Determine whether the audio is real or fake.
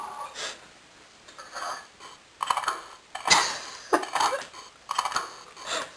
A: real